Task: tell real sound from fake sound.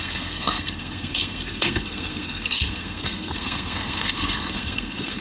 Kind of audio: fake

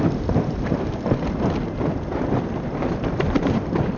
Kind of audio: real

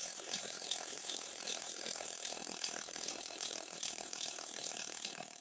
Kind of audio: fake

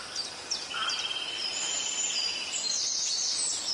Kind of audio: real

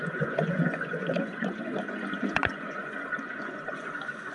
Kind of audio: fake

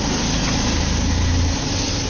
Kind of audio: real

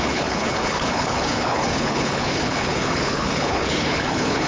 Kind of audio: fake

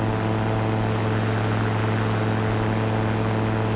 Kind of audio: real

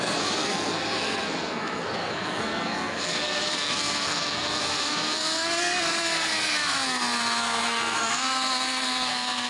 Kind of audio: fake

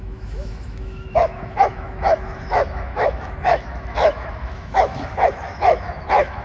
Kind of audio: fake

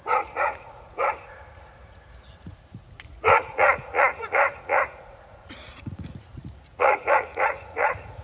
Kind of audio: fake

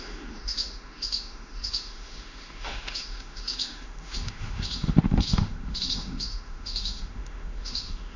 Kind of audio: fake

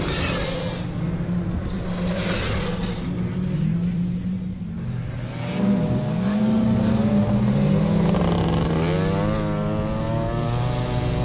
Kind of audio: real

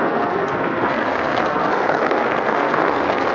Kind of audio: fake